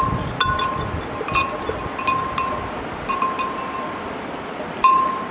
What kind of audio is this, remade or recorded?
recorded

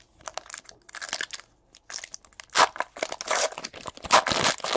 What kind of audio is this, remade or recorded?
recorded